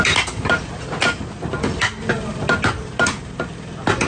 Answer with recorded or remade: recorded